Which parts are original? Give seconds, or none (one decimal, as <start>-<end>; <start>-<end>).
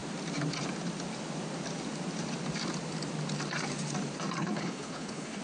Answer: 0.0-4.4